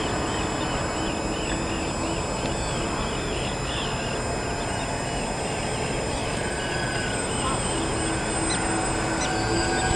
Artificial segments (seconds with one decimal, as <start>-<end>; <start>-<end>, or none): 6.2-7.0